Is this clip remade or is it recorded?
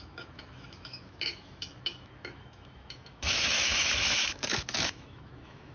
remade